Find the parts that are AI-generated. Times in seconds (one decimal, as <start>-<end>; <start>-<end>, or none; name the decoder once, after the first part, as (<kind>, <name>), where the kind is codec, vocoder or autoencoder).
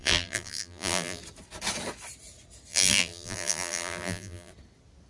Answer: 0.0-1.2 (vocoder, BigVGAN v2); 2.7-4.5